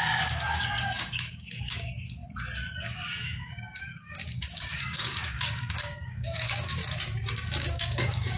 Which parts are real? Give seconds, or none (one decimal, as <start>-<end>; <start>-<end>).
2.2-2.8; 6.8-7.3